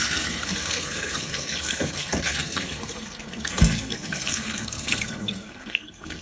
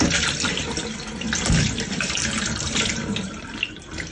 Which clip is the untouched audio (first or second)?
second